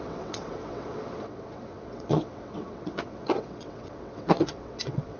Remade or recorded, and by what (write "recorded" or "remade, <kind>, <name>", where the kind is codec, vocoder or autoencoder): remade, vocoder, WaveNeXt